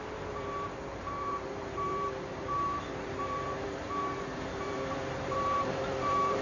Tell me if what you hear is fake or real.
fake